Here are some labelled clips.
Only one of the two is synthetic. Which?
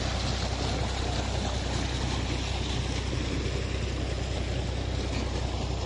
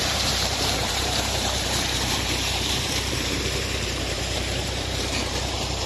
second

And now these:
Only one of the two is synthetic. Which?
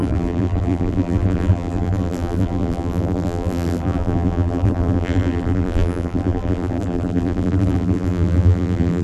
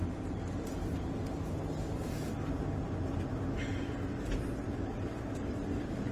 first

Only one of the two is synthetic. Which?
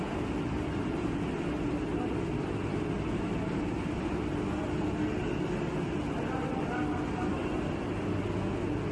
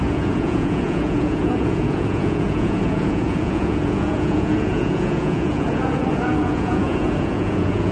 second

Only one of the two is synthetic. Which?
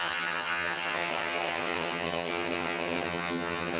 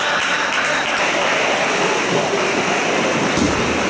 first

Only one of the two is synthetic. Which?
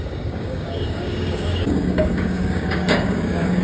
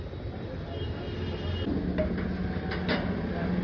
first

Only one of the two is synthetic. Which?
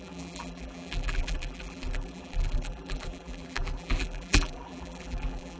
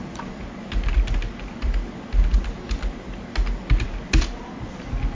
first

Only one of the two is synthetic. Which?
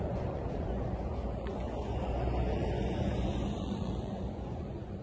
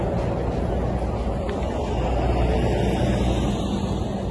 first